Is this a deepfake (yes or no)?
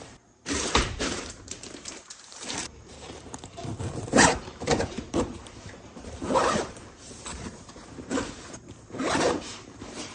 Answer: yes